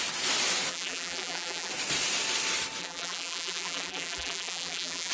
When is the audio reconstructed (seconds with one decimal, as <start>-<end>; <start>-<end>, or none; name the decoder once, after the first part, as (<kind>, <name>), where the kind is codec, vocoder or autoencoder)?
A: 0.7-1.7 (vocoder, BigVGAN v2); 2.8-5.1